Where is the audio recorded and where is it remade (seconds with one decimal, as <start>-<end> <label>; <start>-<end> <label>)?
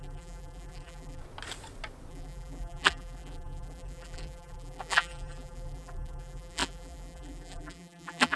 0.0-1.2 remade; 1.2-2.1 recorded; 2.1-8.4 remade